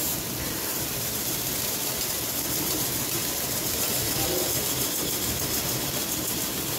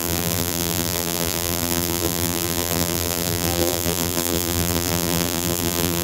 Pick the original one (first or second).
first